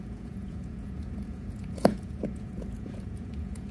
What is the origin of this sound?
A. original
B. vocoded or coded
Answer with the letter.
B